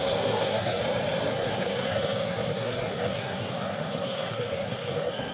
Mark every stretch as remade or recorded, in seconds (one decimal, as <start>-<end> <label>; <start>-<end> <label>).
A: 0.0-0.8 remade; 0.8-1.3 recorded; 1.3-5.3 remade